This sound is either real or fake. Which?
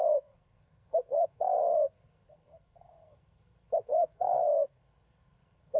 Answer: fake